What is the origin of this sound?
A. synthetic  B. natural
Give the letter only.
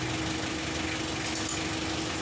B